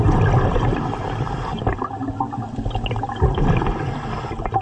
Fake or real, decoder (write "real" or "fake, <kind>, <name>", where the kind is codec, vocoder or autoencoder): real